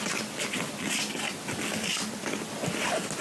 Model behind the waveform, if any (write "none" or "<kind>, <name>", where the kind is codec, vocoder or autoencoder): none